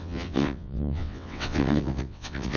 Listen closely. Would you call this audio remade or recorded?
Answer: remade